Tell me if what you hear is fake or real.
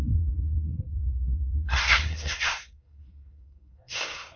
fake